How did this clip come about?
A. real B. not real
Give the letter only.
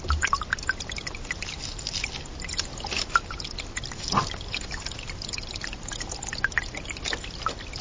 A